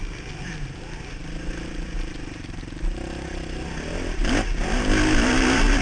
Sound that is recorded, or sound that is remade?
recorded